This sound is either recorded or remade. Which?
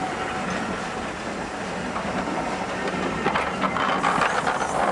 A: recorded